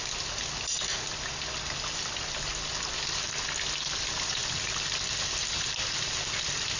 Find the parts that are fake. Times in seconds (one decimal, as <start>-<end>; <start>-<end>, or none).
none